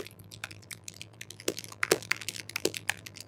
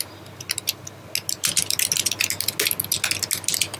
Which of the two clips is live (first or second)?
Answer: second